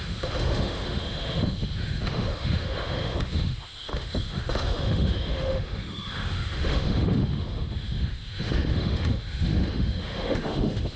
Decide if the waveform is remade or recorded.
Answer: remade